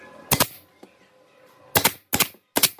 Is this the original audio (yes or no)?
yes